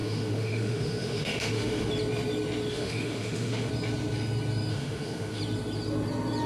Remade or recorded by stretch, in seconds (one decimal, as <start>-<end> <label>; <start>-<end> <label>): 0.0-1.9 remade; 1.9-2.7 recorded; 2.7-3.7 remade; 3.7-4.7 recorded; 4.7-5.4 remade; 5.4-6.5 recorded